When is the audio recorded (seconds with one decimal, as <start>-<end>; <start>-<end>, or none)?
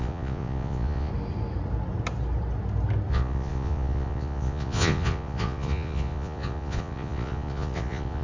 1.1-3.1